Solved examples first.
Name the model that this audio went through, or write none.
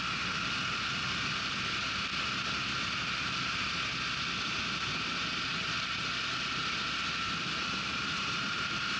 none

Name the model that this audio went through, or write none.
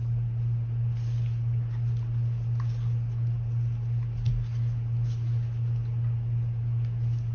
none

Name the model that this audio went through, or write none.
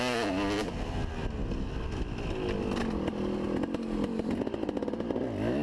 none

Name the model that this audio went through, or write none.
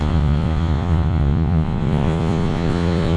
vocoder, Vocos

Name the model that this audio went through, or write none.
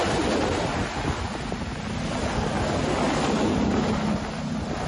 none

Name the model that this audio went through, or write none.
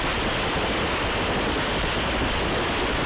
none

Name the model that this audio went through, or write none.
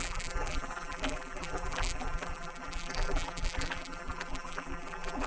vocoder, BigVGAN v2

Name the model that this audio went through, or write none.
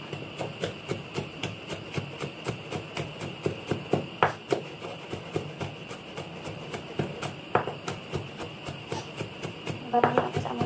none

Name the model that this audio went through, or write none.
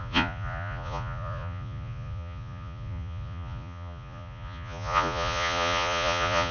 vocoder, Vocos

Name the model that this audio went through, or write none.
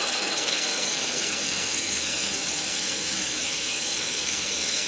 codec, SNAC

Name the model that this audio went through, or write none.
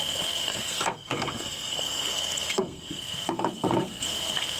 codec, SNAC